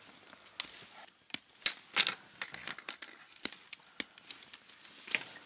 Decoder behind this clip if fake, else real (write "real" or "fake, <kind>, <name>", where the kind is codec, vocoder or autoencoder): real